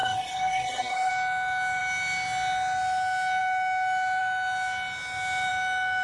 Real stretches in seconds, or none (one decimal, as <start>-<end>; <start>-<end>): 1.1-6.0